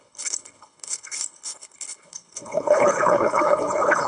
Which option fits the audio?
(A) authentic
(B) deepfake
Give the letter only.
B